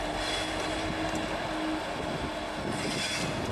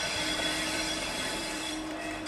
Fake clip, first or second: second